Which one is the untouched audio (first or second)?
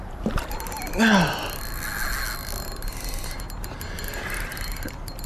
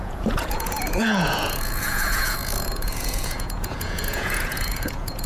first